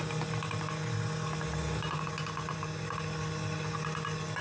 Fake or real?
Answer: real